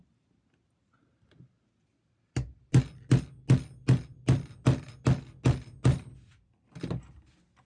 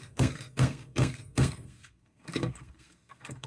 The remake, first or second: second